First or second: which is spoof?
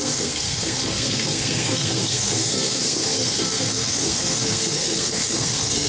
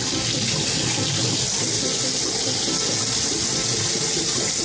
first